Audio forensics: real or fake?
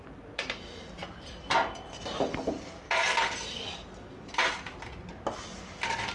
real